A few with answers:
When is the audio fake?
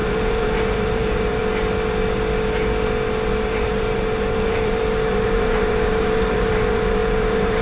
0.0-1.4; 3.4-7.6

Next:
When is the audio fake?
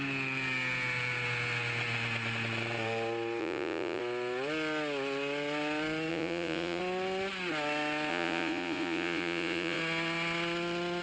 3.4-4.0; 6.1-6.8; 8.1-9.8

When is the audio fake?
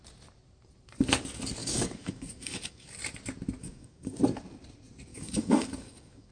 1.6-3.0; 3.6-4.2; 5.1-6.3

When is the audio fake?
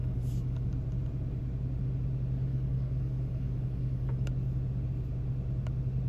0.0-0.7; 2.5-4.3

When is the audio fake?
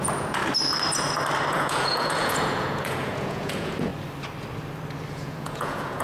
0.0-0.4; 1.5-3.9; 5.1-6.0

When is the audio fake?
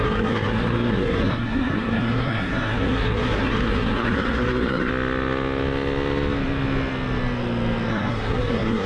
0.0-4.9; 7.9-8.9